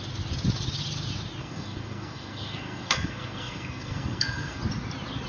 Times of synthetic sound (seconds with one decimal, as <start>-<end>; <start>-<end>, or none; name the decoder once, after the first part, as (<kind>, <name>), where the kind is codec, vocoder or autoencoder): 1.4-4.6 (codec, SNAC)